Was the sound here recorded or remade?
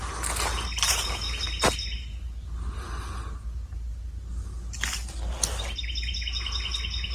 recorded